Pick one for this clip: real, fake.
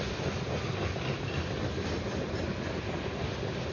real